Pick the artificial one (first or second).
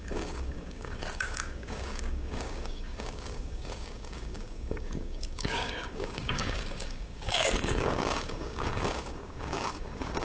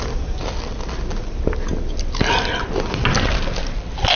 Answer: first